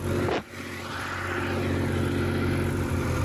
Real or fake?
real